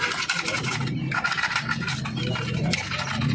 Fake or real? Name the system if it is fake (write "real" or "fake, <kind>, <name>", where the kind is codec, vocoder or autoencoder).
real